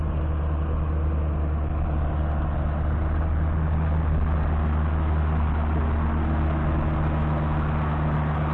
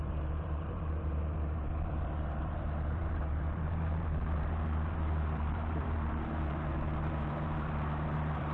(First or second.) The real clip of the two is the first